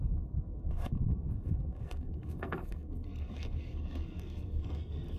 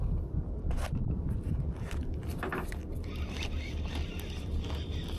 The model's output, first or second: first